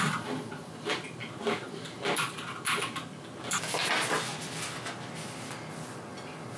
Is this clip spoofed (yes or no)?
no